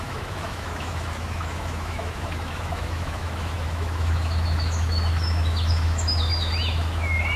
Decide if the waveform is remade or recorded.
remade